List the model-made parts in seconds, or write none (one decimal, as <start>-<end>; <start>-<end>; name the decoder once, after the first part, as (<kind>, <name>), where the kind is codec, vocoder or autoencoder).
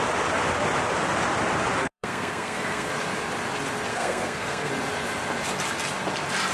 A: 1.8-2.9 (codec, SNAC); 3.9-4.7